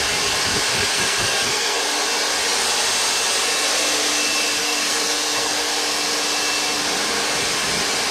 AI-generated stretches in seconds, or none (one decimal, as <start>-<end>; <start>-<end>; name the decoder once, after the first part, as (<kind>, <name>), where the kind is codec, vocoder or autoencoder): 0.7-1.8 (codec, SNAC); 4.6-5.7